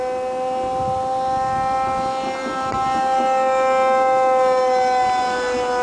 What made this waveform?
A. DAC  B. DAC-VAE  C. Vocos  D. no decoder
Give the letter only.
D